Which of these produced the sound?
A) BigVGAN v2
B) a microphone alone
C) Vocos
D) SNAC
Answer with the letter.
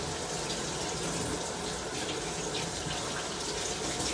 B